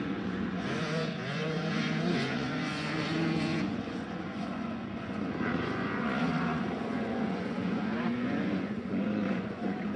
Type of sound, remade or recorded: remade